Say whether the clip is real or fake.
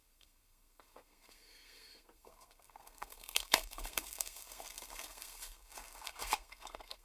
fake